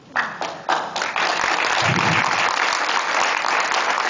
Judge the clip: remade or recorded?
recorded